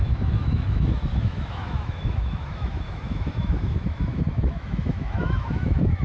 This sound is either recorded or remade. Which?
remade